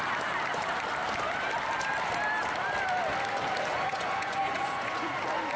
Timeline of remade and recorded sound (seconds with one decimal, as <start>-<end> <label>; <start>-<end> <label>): 0.0-3.7 recorded; 3.7-5.1 remade; 5.1-5.6 recorded